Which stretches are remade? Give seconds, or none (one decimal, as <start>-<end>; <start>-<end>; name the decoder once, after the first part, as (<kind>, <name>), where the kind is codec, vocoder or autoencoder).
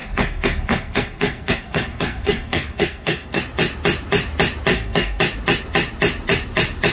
0.0-3.4 (codec, SNAC); 4.7-5.2